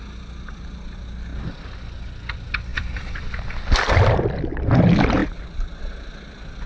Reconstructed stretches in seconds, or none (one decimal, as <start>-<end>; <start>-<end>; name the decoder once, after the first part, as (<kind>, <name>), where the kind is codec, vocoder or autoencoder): 2.7-3.5 (vocoder, BigVGAN v2)